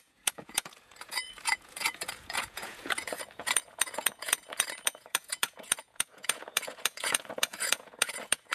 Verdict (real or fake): fake